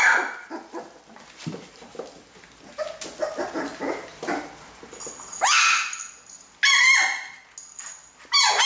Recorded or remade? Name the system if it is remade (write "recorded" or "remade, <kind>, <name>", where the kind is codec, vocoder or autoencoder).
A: recorded